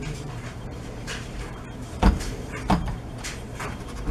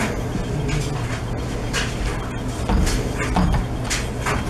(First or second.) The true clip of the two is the second